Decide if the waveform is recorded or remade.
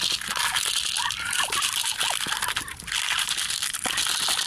recorded